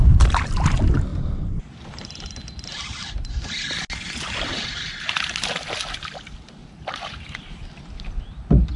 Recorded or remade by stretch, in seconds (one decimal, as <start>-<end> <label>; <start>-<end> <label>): 0.0-6.6 recorded; 6.6-7.6 remade; 7.6-8.8 recorded